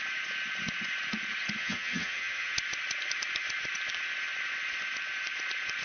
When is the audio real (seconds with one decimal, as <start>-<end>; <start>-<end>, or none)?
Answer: 0.0-1.6; 2.5-5.8